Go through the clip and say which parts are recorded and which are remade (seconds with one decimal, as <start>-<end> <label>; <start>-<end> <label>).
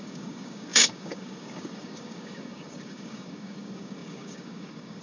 0.0-5.0 remade